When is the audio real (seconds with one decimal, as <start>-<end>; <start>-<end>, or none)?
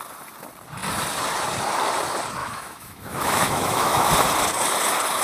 0.0-2.4; 4.1-5.2